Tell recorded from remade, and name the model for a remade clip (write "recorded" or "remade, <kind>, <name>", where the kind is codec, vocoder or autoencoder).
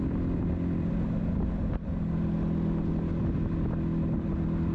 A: recorded